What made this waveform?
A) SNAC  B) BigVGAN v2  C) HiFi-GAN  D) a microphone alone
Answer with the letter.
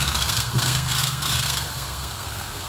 A